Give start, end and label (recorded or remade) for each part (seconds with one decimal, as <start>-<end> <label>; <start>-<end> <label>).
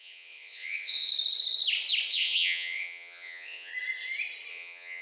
0.0-1.1 remade; 1.1-2.1 recorded; 2.1-3.7 remade; 3.7-4.5 recorded; 4.5-5.0 remade